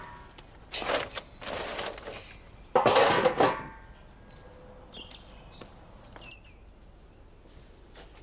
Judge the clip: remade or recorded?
recorded